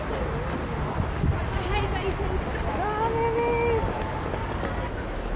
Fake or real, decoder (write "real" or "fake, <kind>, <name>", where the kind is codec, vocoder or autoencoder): real